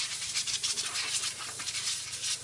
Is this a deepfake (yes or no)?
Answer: no